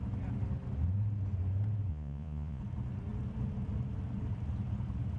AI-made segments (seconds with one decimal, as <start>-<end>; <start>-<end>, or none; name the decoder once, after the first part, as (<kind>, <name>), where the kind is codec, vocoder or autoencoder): 1.9-2.6 (vocoder, Vocos)